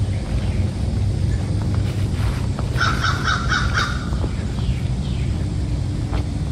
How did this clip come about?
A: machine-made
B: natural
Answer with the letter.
A